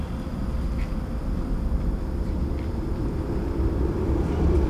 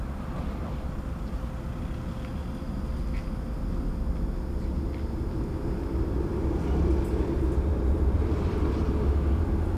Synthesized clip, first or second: first